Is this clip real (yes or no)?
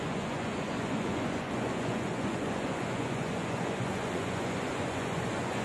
no